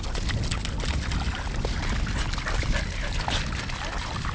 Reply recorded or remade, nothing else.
recorded